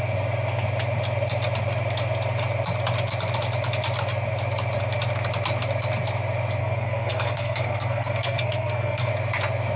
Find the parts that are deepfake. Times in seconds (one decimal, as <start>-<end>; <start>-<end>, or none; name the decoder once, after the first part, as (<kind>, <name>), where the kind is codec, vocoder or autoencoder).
6.6-9.1 (codec, SNAC)